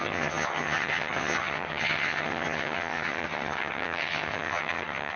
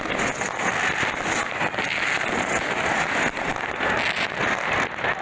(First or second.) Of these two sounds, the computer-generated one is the first